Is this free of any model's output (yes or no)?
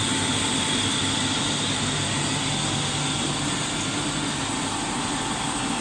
yes